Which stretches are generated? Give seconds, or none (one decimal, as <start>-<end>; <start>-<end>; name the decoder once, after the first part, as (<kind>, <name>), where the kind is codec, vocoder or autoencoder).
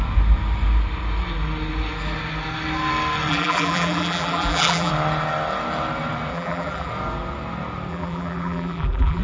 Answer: 3.3-4.9 (vocoder, BigVGAN v2); 6.3-6.9; 7.9-9.2